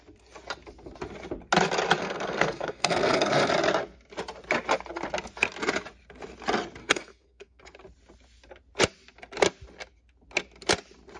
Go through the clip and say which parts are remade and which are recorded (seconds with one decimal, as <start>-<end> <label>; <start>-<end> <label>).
0.0-2.0 recorded; 2.0-3.5 remade; 3.5-6.8 recorded; 6.8-7.6 remade; 7.6-11.2 recorded